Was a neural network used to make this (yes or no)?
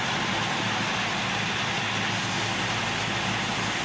no